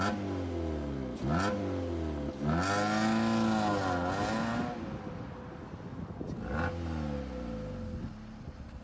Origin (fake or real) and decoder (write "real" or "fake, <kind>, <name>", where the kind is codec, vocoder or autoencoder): real